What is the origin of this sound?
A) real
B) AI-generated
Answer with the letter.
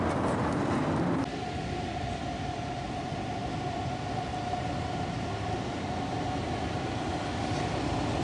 A